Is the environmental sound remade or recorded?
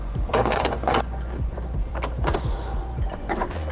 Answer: remade